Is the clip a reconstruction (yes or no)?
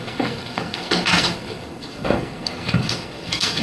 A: yes